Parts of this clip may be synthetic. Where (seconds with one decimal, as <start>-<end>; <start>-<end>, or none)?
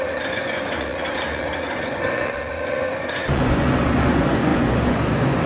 0.0-5.5